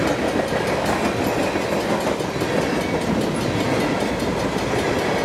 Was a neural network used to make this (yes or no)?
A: no